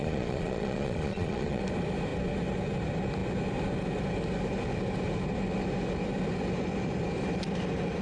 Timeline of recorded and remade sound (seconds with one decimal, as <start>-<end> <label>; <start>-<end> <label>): 0.0-1.6 remade; 1.6-8.0 recorded